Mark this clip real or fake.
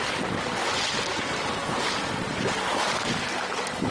real